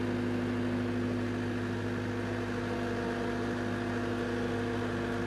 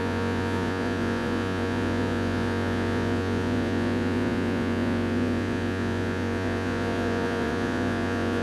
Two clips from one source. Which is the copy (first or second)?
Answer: second